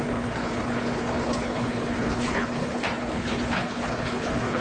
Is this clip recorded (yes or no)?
no